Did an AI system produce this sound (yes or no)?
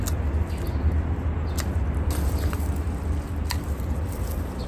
no